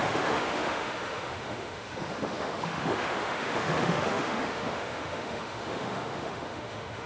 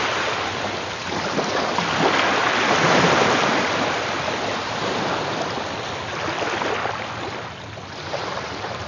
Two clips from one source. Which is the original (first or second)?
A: second